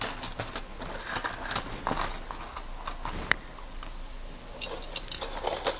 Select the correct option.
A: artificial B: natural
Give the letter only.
B